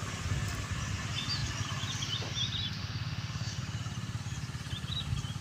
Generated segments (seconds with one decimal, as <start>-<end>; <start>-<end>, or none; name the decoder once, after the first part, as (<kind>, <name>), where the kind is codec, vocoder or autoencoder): 2.8-3.6 (autoencoder, DAC-VAE)